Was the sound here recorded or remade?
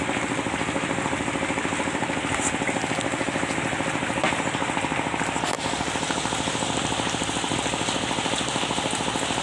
recorded